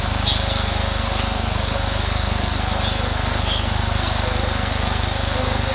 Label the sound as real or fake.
fake